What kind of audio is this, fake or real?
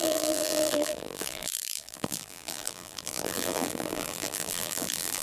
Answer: fake